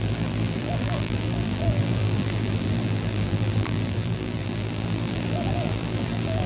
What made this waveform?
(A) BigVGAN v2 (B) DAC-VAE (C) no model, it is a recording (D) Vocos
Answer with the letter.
A